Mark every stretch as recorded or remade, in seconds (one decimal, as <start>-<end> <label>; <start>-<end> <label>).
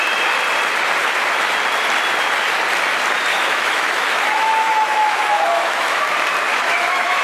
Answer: 0.0-3.3 recorded; 3.3-6.0 remade; 6.0-6.5 recorded; 6.5-7.2 remade